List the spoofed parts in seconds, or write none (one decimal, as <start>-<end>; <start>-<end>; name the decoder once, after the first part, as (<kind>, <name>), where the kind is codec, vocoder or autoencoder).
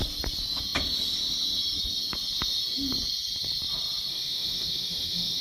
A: 4.1-5.4 (autoencoder, DAC-VAE)